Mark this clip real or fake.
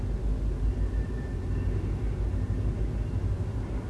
real